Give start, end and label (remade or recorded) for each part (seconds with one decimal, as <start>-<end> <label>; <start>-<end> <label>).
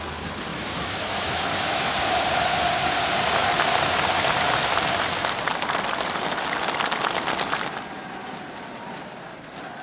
0.0-0.5 recorded; 0.5-1.9 remade; 1.9-9.8 recorded